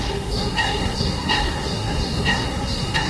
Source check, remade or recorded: remade